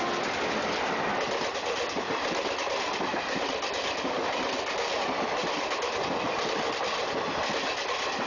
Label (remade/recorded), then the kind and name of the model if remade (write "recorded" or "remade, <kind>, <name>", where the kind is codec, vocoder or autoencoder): recorded